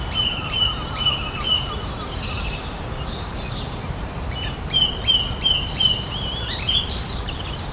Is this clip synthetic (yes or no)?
yes